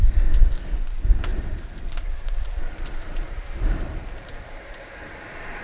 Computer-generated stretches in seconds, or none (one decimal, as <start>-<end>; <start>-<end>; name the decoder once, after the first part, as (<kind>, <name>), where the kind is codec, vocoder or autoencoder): 1.3-4.7 (vocoder, BigVGAN v2)